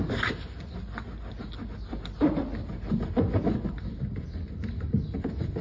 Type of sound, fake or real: real